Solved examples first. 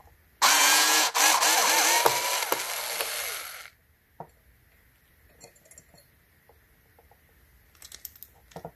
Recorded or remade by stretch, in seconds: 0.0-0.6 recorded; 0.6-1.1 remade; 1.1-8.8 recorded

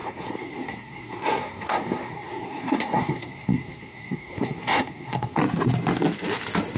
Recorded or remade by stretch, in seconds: 0.0-5.4 remade; 5.4-6.8 recorded

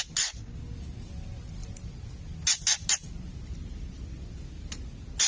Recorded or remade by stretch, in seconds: 0.0-5.3 recorded

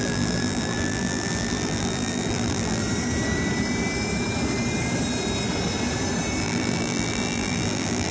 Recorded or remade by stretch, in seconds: 0.0-2.8 remade; 2.8-6.4 recorded; 6.4-8.1 remade

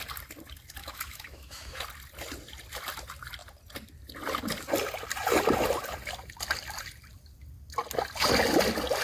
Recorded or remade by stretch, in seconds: 0.0-0.8 recorded; 0.8-1.8 remade; 1.8-9.0 recorded